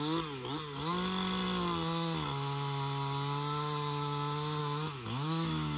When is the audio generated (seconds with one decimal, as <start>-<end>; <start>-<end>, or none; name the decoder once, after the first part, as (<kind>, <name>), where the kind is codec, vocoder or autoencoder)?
4.6-5.8 (autoencoder, DAC-VAE)